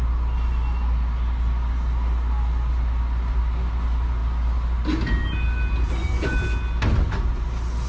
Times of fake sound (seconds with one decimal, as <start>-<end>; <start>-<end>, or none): none